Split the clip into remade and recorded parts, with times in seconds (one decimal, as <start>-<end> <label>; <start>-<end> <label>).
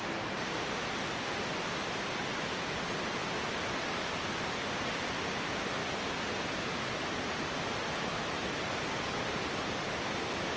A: 0.0-10.6 recorded